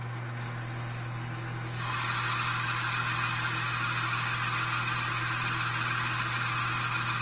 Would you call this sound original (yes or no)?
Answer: yes